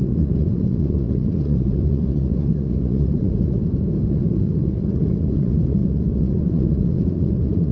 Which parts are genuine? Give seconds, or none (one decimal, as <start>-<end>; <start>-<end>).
3.6-4.1